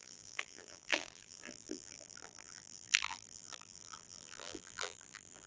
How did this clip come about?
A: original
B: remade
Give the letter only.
B